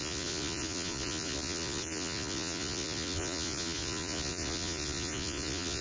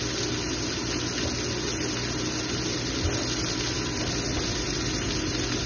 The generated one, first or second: first